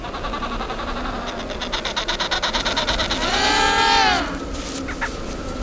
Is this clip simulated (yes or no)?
no